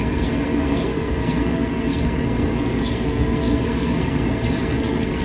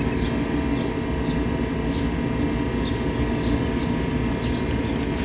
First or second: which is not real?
first